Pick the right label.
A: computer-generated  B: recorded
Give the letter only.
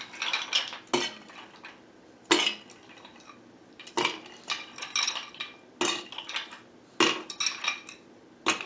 B